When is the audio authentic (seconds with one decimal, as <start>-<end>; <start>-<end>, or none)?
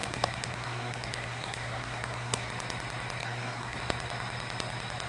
2.5-3.2; 3.8-5.1